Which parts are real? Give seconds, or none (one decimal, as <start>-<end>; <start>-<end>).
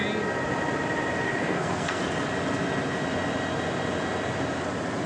0.0-1.4; 2.0-5.1